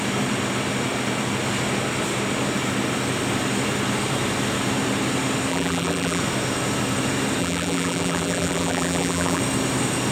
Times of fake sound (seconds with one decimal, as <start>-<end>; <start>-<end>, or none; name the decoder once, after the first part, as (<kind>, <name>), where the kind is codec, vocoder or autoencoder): 5.5-6.2 (vocoder, BigVGAN v2); 7.4-9.4